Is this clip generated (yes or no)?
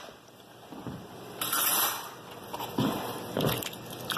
no